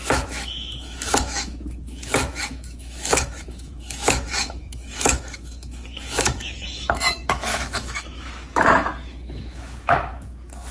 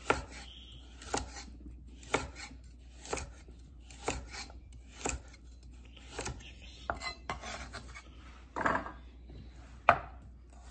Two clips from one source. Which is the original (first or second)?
second